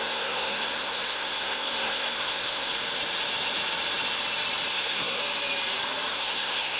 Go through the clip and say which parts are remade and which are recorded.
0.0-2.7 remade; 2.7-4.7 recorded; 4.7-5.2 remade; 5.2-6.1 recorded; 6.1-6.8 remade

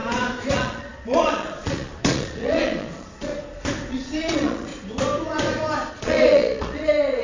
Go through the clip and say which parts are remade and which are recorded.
0.0-0.5 recorded; 0.5-3.3 remade; 3.3-3.9 recorded; 3.9-4.7 remade; 4.7-5.9 recorded; 5.9-7.2 remade

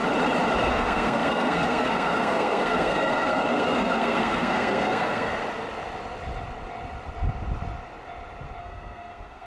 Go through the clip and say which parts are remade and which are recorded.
0.0-0.7 recorded; 0.7-5.4 remade; 5.4-8.6 recorded; 8.6-9.5 remade

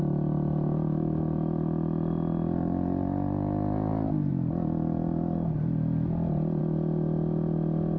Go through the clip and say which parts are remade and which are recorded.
0.0-8.0 recorded

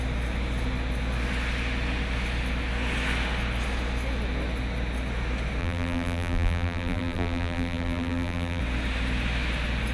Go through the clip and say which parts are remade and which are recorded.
0.0-5.6 recorded; 5.6-8.6 remade; 8.6-9.9 recorded